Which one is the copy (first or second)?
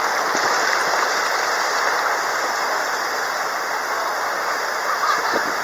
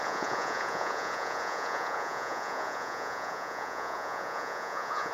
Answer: second